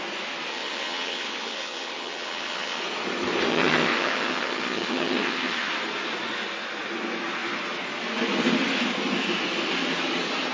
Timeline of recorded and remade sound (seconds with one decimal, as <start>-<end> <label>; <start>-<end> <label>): 0.0-0.5 recorded; 0.5-2.8 remade; 2.8-3.5 recorded; 3.5-5.7 remade; 5.7-10.5 recorded